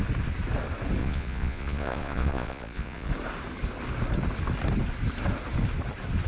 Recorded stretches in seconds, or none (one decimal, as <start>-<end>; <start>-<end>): 0.0-1.0; 3.1-6.3